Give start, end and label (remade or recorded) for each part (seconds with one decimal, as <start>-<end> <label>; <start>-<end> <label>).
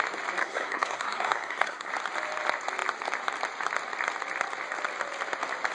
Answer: 0.0-0.4 recorded; 0.4-1.9 remade; 1.9-5.7 recorded